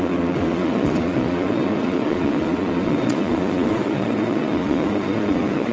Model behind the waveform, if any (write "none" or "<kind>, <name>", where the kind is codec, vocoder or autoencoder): vocoder, Vocos